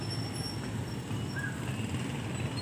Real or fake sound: real